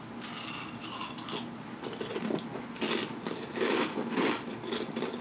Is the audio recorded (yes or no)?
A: yes